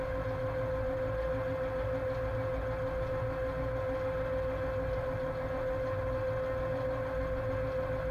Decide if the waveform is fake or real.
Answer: real